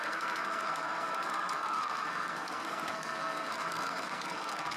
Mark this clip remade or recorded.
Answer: remade